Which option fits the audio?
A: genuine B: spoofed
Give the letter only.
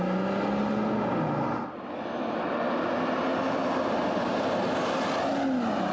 A